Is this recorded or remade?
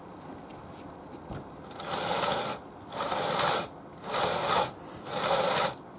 recorded